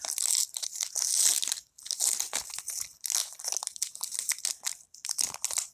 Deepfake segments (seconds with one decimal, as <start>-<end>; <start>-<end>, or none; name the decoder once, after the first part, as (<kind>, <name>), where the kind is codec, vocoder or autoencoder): none